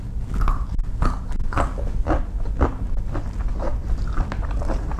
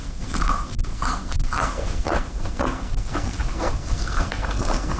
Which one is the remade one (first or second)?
second